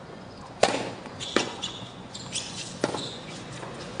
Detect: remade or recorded remade